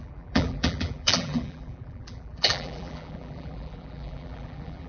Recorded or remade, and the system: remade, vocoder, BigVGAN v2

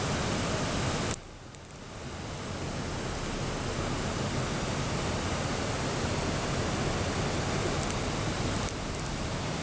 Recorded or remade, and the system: recorded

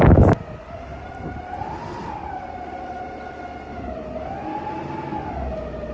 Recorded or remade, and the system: recorded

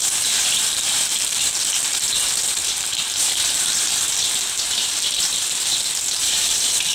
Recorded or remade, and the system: remade, vocoder, BigVGAN v2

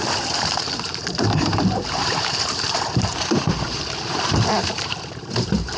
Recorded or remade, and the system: remade, vocoder, BigVGAN v2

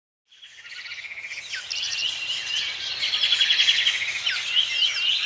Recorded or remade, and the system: recorded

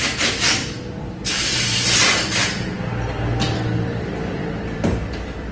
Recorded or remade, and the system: remade, vocoder, BigVGAN v2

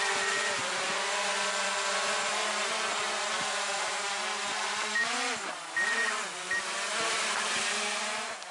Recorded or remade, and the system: remade, vocoder, BigVGAN v2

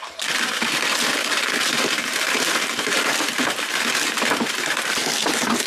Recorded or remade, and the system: remade, vocoder, BigVGAN v2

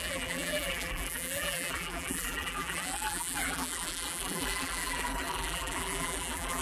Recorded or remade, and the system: remade, vocoder, BigVGAN v2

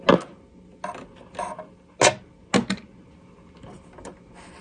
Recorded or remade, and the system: recorded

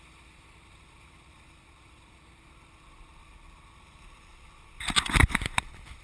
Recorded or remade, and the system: remade, vocoder, BigVGAN v2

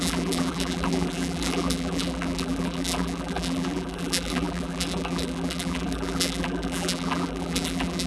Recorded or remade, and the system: remade, vocoder, BigVGAN v2